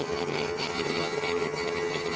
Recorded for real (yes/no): no